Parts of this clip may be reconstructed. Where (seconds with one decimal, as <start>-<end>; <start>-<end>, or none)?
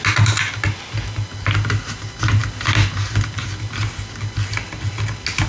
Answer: none